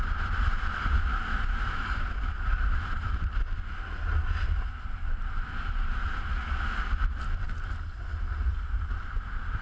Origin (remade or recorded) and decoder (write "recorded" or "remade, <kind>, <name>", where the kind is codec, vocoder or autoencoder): recorded